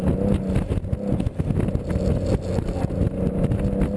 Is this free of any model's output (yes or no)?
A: yes